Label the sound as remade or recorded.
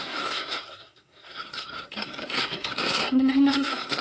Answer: remade